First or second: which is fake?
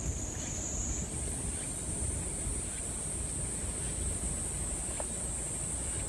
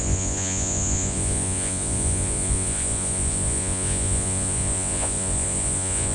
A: second